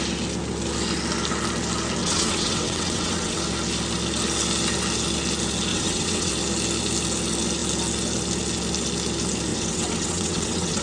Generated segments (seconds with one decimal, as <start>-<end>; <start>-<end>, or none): 2.0-3.4; 5.7-6.3; 9.5-10.8